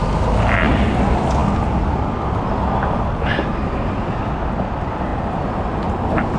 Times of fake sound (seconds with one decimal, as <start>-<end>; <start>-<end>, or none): none